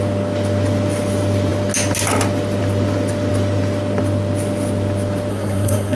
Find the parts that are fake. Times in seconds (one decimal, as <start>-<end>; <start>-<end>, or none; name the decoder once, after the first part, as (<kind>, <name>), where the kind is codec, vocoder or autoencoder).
5.3-6.0 (codec, SNAC)